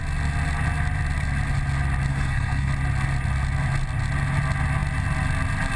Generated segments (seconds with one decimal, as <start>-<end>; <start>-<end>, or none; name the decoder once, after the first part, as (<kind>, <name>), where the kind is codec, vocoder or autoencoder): 2.1-2.7 (codec, SNAC)